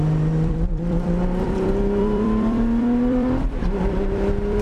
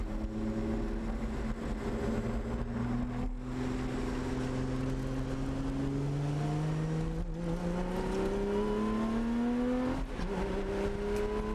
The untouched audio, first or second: second